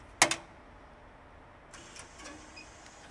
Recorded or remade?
recorded